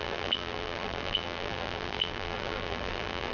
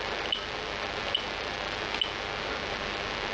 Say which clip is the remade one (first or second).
first